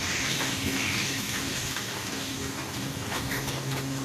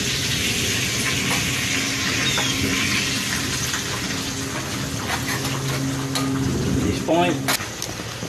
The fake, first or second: first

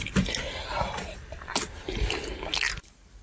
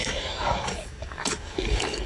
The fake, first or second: second